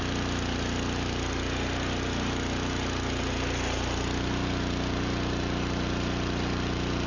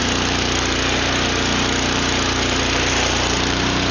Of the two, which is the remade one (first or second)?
second